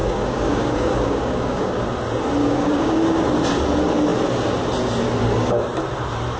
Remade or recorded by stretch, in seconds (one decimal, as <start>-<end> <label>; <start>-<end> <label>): 0.0-1.8 remade; 1.8-2.4 recorded; 2.4-3.2 remade; 3.2-6.4 recorded